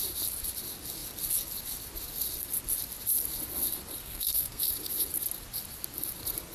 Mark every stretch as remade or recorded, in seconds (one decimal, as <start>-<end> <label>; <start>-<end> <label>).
0.0-4.0 recorded; 4.0-4.6 remade; 4.6-6.5 recorded